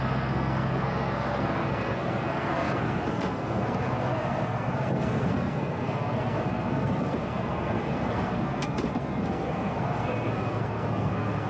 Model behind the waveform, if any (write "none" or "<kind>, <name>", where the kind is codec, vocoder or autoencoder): codec, SNAC